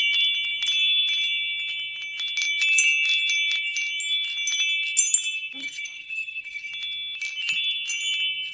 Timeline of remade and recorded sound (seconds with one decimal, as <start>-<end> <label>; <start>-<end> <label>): 0.0-5.6 recorded; 5.6-6.7 remade; 6.7-8.5 recorded